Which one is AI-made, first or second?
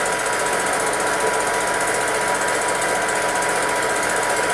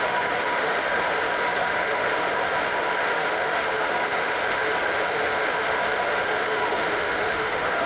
second